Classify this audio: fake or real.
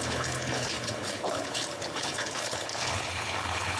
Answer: fake